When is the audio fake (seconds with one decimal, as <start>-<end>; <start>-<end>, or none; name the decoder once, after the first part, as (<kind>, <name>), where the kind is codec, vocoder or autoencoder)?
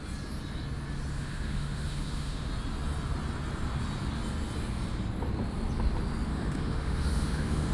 1.1-2.5 (autoencoder, DAC-VAE); 6.3-7.7